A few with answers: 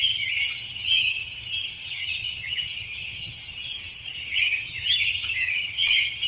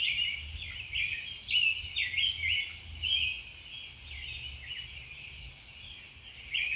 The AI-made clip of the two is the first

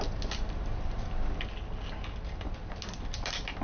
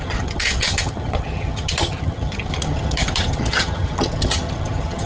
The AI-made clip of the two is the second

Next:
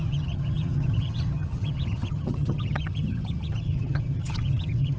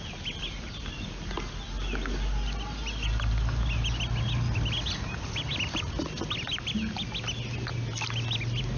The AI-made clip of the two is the first